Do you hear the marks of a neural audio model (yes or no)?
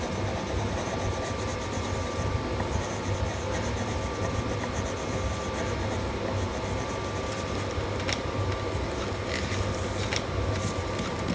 no